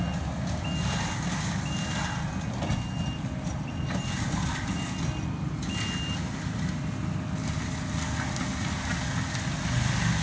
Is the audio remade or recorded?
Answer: recorded